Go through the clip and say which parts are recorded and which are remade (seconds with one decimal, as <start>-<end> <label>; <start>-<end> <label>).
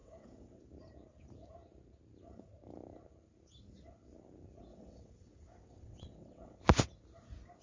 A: 0.0-0.6 remade; 0.6-4.7 recorded; 4.7-6.6 remade; 6.6-7.6 recorded